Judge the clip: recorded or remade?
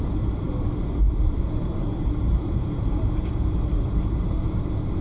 remade